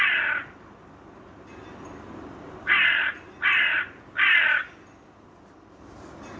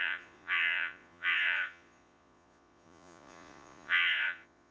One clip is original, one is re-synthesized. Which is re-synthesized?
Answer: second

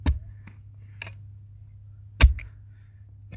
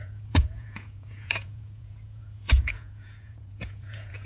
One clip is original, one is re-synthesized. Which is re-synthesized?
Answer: second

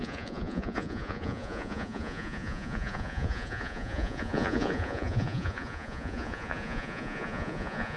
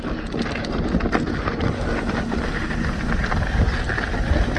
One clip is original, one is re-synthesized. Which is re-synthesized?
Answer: first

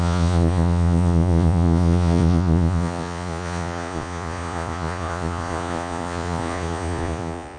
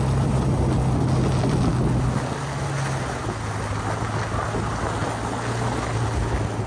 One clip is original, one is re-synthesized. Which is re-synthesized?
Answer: first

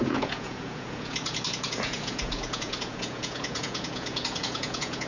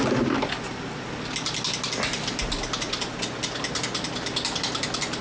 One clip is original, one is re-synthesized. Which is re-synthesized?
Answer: first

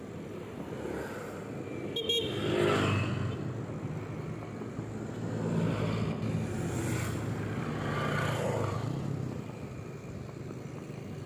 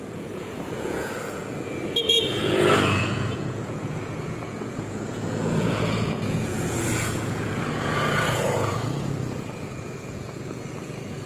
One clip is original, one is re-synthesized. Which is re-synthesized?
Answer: second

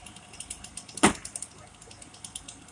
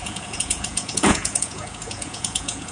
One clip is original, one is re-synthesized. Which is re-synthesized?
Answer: second